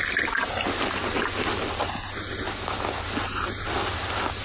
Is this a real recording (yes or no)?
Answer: yes